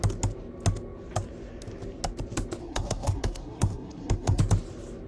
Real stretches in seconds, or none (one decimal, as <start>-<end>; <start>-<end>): 0.0-2.6; 4.4-5.1